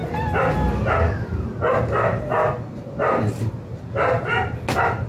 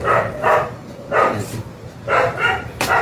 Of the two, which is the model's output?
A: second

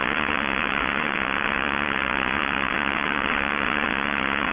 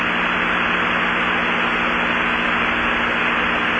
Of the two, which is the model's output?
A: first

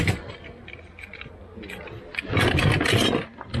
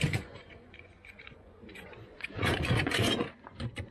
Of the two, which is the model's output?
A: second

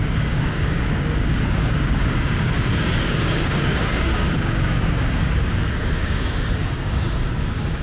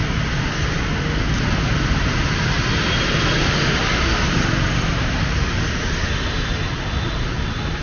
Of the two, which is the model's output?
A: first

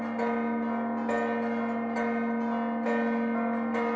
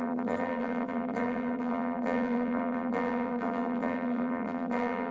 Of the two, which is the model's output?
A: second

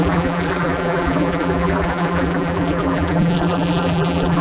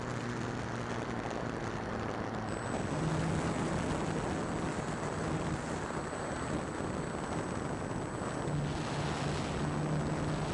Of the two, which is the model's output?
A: first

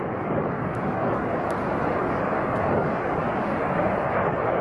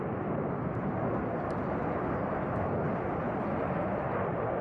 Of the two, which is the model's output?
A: first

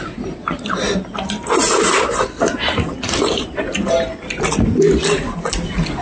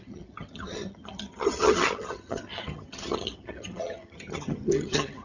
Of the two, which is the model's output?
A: second